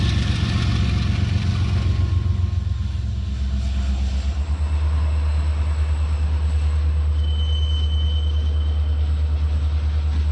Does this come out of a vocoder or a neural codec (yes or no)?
no